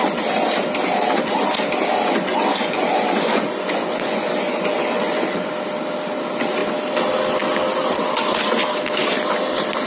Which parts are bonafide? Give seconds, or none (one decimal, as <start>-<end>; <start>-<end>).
0.0-2.3; 5.5-9.9